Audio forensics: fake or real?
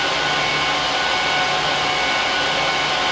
real